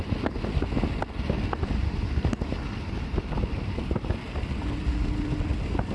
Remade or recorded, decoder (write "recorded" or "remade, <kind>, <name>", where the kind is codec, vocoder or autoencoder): recorded